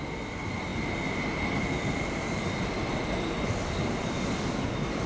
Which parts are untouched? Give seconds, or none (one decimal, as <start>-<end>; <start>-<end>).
0.0-5.1